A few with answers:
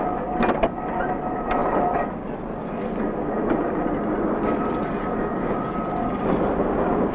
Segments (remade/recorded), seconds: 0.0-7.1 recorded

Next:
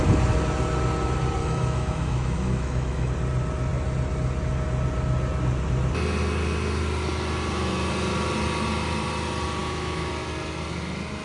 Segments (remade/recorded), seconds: 0.0-1.4 recorded; 1.4-3.1 remade; 3.1-9.6 recorded; 9.6-10.1 remade; 10.1-11.2 recorded

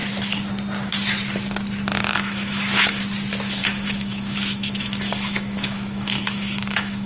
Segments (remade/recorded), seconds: 0.0-2.1 recorded; 2.1-3.0 remade; 3.0-3.6 recorded; 3.6-7.1 remade